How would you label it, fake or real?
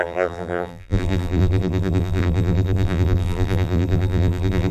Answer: fake